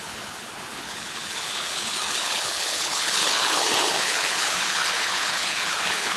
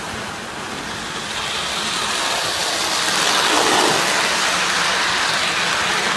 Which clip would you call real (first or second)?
second